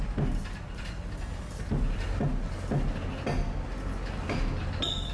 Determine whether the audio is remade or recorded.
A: recorded